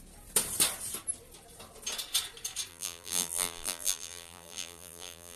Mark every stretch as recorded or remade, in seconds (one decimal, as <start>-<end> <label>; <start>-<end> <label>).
0.0-2.7 recorded; 2.7-5.4 remade